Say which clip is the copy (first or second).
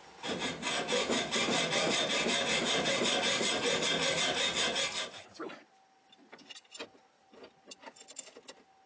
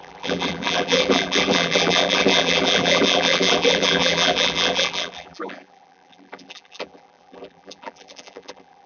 second